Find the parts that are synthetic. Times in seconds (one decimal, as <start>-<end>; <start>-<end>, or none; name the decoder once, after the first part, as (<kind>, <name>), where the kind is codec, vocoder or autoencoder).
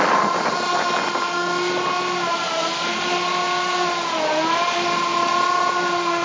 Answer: none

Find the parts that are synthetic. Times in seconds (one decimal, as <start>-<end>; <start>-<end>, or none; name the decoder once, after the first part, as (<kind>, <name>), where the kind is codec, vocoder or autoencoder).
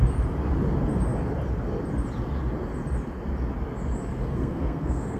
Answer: 4.1-5.2 (codec, SNAC)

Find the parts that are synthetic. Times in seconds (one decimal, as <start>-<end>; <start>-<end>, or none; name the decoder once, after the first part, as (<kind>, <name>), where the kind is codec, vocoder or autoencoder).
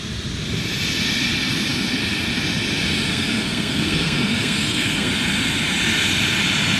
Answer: 3.1-5.1 (codec, SNAC)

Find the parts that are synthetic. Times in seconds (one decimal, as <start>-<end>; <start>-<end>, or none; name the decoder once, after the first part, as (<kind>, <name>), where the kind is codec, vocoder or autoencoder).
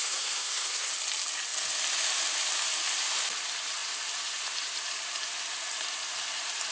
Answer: 0.0-0.9 (codec, SNAC)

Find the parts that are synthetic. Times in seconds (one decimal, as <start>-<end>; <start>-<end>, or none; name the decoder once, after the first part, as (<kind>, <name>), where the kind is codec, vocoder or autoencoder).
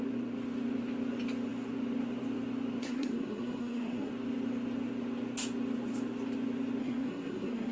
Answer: 2.8-4.1 (codec, SNAC); 6.8-7.7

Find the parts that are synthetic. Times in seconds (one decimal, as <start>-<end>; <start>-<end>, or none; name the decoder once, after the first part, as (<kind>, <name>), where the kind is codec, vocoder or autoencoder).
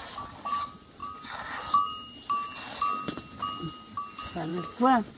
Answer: none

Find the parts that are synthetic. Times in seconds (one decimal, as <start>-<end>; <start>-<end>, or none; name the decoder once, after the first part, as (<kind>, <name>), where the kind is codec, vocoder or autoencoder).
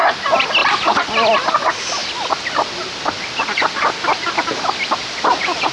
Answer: none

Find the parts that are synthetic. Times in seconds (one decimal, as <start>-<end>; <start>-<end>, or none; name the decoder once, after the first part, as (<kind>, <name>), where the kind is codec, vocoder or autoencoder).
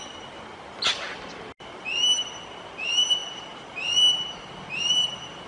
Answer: none